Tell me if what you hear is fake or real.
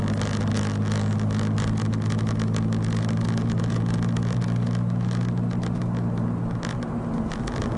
real